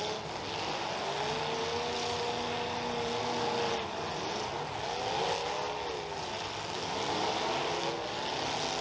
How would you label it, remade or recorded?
recorded